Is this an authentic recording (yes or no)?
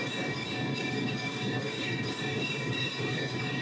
no